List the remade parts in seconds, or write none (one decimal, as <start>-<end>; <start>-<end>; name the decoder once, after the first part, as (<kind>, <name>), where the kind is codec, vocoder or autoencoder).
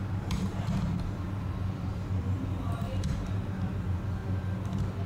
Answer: 0.0-4.2 (vocoder, BigVGAN v2)